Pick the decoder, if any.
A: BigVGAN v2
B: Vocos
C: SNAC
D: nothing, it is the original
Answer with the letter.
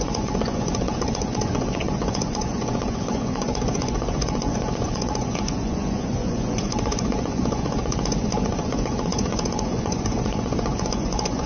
B